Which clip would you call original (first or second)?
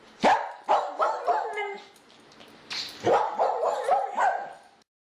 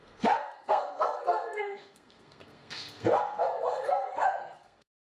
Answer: first